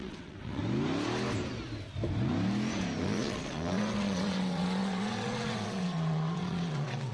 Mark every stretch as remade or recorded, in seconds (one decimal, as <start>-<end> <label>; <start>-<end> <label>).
0.0-0.6 remade; 0.6-3.0 recorded; 3.0-7.1 remade